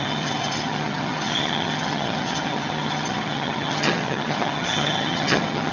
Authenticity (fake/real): fake